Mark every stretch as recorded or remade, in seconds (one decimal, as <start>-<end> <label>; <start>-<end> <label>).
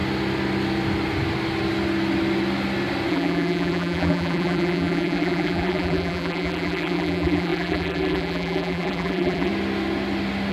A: 0.0-3.1 recorded; 3.1-9.5 remade; 9.5-10.5 recorded